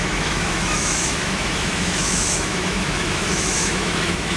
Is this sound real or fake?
fake